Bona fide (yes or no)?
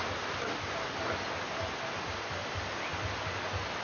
yes